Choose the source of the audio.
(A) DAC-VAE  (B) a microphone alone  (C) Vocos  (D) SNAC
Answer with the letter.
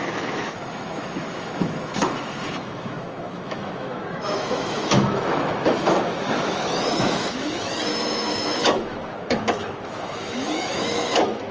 A